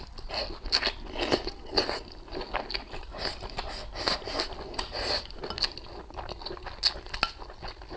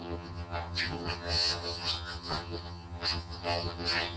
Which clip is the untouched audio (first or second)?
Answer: first